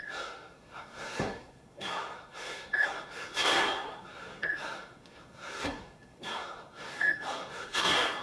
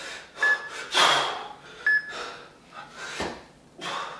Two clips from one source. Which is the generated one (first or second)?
first